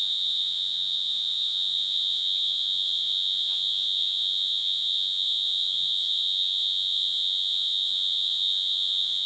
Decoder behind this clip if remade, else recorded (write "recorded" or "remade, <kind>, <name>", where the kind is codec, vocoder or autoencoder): remade, vocoder, Vocos